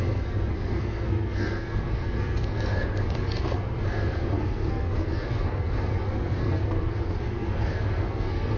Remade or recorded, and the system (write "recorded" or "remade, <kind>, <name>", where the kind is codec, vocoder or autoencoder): remade, codec, SNAC